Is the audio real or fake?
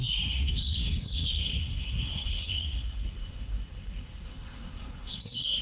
fake